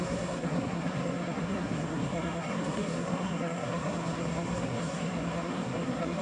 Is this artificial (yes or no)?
yes